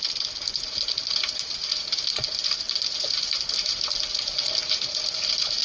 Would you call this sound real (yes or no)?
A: yes